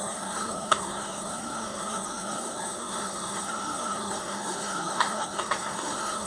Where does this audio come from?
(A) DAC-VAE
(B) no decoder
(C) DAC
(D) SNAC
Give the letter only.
D